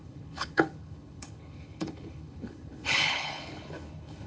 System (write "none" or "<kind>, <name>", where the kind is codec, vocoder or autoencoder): codec, HILCodec